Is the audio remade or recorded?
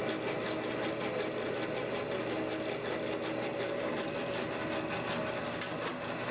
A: recorded